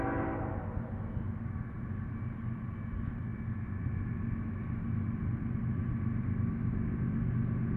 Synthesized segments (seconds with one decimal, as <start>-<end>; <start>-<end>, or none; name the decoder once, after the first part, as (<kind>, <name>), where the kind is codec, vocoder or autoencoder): none